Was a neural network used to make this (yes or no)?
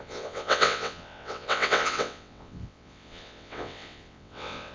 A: yes